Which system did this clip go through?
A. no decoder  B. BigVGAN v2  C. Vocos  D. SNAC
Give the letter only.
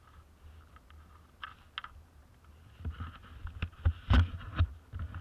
A